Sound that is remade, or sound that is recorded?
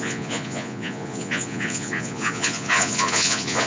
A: remade